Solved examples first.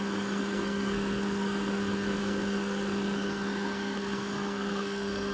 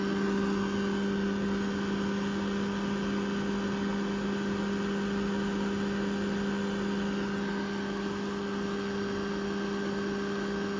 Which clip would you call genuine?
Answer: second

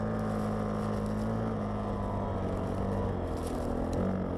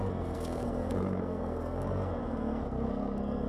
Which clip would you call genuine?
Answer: first